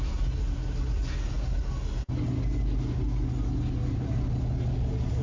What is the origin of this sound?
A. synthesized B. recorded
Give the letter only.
B